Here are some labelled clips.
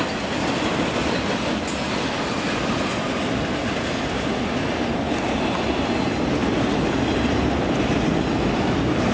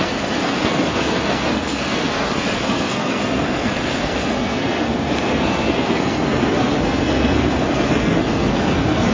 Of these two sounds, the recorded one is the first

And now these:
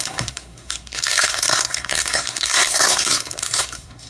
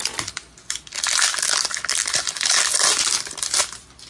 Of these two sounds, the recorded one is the second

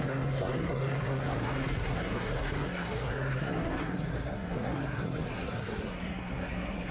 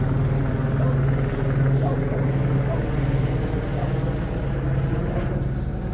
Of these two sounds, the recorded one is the second